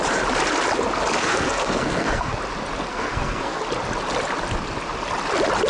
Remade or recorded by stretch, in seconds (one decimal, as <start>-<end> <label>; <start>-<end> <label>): 0.0-1.2 recorded; 1.2-2.4 remade; 2.4-2.9 recorded; 2.9-3.6 remade; 3.6-5.7 recorded